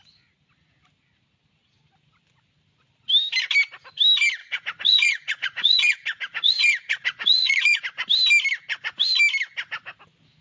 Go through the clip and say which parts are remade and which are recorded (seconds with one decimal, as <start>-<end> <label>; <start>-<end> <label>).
0.0-4.4 recorded; 4.4-7.8 remade; 7.8-10.4 recorded